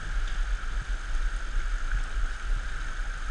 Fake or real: real